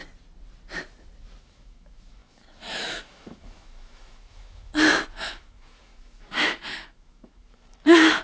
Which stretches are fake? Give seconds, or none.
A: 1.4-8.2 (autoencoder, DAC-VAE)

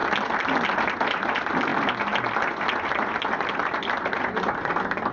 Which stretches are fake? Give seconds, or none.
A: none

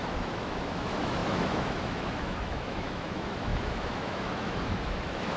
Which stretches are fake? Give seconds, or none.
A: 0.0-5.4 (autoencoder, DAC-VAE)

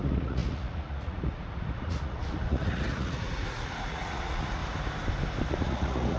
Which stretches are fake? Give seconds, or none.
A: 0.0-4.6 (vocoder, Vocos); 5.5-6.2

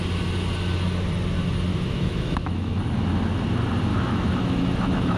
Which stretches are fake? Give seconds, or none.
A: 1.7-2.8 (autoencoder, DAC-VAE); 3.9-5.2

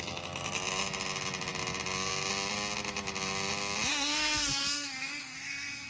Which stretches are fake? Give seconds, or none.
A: 3.9-5.9 (codec, SNAC)